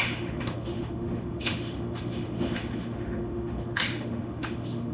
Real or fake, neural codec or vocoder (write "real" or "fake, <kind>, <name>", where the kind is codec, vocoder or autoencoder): fake, autoencoder, DAC-VAE